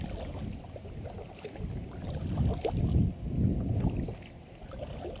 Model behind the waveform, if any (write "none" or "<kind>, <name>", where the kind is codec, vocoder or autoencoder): none